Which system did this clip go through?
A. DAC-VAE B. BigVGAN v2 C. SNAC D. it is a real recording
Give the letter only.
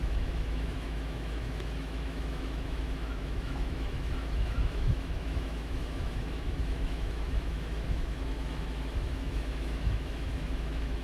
A